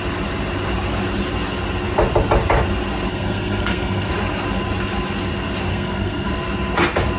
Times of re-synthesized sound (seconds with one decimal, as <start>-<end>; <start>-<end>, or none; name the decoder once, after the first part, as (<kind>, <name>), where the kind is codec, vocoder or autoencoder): 3.1-4.1 (codec, SNAC); 5.7-6.3